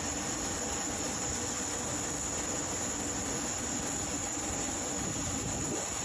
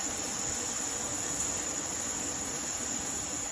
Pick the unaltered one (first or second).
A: first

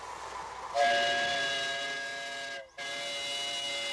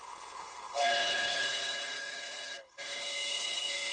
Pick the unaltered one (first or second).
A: first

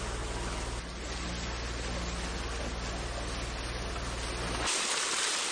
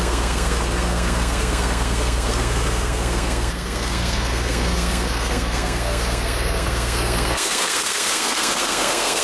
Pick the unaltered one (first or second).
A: first